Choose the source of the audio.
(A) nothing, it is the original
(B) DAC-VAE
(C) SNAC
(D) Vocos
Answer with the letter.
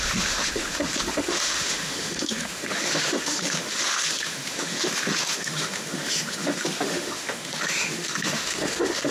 B